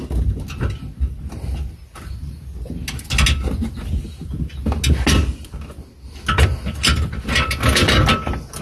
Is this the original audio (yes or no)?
yes